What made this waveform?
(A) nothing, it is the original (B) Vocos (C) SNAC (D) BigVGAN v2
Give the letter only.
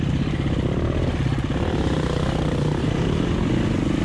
A